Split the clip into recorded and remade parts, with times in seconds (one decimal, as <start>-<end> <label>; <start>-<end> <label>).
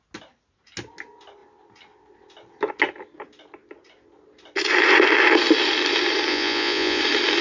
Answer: 0.0-6.3 recorded; 6.3-7.0 remade; 7.0-7.4 recorded